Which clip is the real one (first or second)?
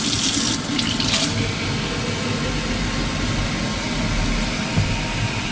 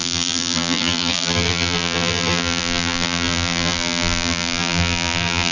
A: first